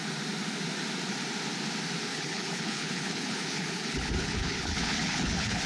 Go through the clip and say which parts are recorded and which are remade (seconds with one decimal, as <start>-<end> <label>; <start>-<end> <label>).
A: 0.0-2.1 recorded; 2.1-5.7 remade